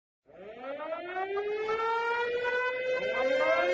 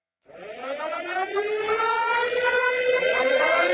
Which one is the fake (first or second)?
second